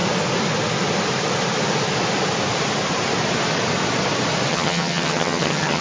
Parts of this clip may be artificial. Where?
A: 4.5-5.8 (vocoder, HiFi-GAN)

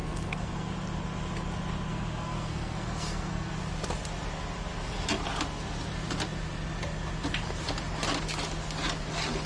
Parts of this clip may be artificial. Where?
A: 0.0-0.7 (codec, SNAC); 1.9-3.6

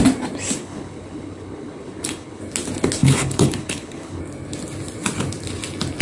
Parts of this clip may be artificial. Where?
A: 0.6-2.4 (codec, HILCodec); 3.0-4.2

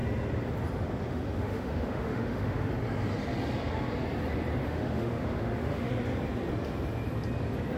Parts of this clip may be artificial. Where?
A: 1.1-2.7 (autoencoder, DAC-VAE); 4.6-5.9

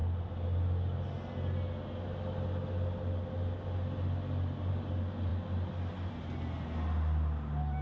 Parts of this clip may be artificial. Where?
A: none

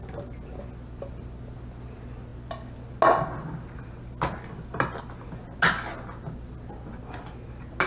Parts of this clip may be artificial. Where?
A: none